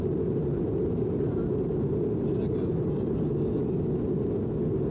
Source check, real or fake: real